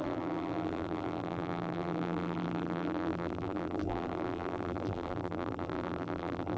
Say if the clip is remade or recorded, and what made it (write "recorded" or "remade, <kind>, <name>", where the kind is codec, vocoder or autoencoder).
remade, vocoder, BigVGAN v2